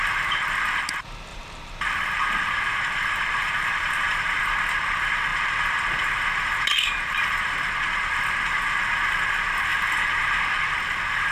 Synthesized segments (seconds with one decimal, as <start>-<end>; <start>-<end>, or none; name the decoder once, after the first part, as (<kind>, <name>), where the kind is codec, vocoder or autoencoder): 1.3-4.4 (vocoder, BigVGAN v2); 9.7-10.4